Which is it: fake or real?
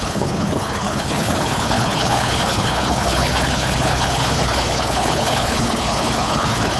fake